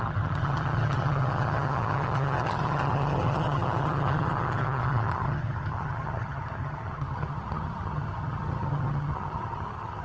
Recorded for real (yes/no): no